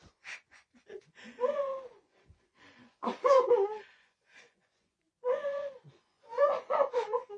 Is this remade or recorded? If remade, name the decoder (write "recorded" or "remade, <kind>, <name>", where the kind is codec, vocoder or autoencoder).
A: remade, vocoder, Vocos